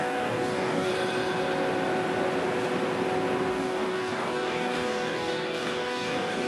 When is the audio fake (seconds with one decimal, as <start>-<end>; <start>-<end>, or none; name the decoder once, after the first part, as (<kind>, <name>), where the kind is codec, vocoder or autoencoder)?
0.0-0.9 (codec, DAC); 3.5-6.5